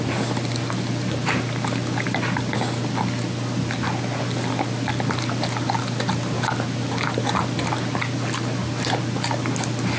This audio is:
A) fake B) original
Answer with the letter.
B